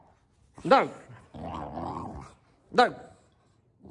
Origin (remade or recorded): recorded